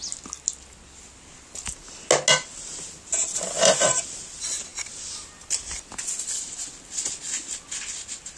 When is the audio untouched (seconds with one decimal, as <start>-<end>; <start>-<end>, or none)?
0.0-8.4